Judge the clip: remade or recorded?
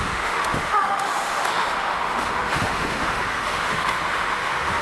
remade